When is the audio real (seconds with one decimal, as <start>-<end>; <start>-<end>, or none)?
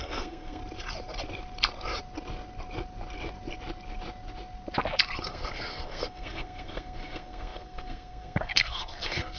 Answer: 0.6-5.3